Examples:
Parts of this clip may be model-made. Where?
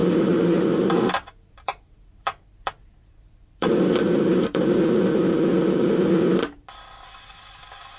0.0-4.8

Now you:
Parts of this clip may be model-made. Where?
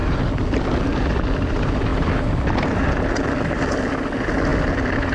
none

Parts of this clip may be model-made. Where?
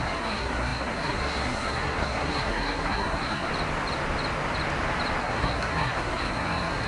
0.0-3.5; 5.2-6.9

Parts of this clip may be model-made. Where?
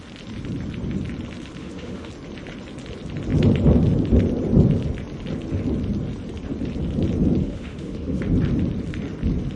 1.6-2.1; 7.4-8.2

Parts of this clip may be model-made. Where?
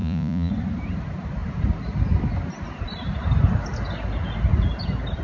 0.0-0.5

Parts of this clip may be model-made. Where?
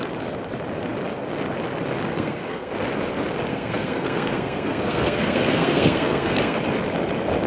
2.1-2.7; 3.5-6.6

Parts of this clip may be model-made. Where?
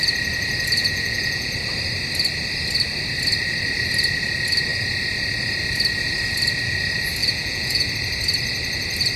0.8-1.5; 7.2-7.9